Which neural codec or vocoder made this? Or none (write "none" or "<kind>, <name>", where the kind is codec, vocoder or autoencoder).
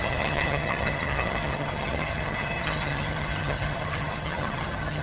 vocoder, HiFi-GAN